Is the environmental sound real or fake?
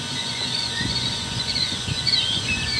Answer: fake